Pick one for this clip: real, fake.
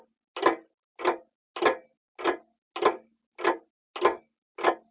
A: real